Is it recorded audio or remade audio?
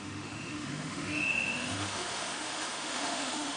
remade